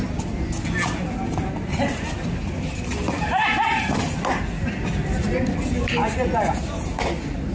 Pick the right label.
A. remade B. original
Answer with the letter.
B